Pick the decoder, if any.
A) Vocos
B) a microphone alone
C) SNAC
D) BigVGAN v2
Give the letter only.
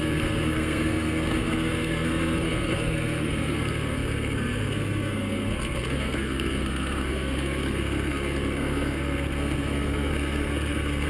C